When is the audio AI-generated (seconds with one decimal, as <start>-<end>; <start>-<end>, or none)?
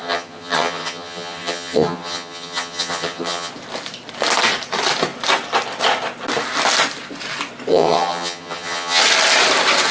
0.0-3.5; 7.7-9.0